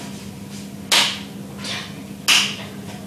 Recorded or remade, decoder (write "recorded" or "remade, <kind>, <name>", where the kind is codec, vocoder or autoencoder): recorded